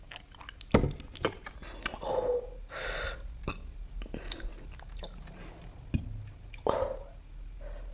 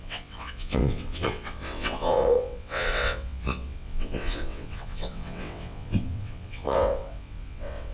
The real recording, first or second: first